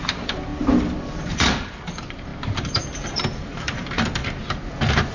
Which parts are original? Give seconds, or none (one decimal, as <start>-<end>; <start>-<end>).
2.3-3.1; 4.2-5.1